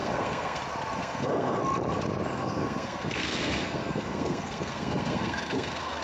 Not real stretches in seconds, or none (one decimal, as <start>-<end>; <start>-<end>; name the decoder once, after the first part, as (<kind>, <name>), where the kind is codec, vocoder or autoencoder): 0.0-0.6 (codec, SNAC); 1.0-1.6; 2.3-6.0